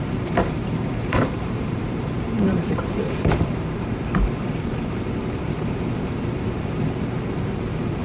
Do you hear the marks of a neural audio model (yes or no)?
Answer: yes